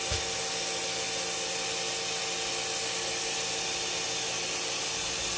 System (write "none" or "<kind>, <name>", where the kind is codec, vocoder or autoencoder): none